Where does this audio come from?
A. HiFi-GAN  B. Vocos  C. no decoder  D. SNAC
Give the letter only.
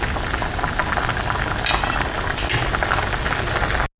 C